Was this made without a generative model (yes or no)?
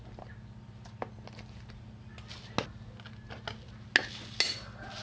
yes